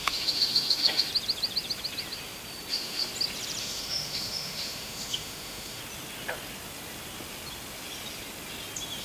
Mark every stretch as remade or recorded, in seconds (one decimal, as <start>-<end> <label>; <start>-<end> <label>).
0.0-1.1 remade; 1.1-2.7 recorded; 2.7-3.1 remade; 3.1-3.6 recorded; 3.6-5.8 remade; 5.8-9.0 recorded